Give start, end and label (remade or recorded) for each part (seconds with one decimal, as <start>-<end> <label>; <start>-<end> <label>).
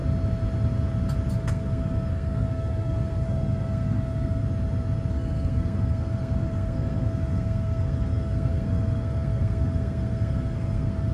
0.0-1.3 recorded; 1.3-4.4 remade; 4.4-5.1 recorded; 5.1-11.1 remade